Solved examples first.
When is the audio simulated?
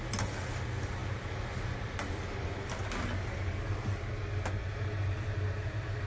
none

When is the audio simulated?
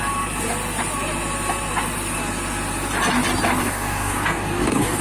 3.6-5.0 (codec, DAC)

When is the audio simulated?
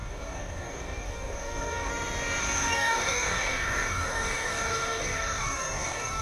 0.0-1.9 (codec, DAC); 2.4-6.2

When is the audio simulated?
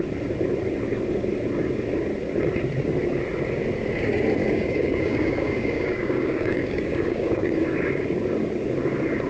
4.4-7.6 (codec, DAC)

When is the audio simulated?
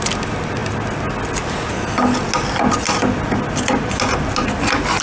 none